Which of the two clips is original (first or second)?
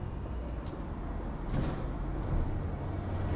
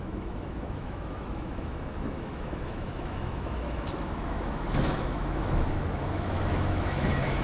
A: first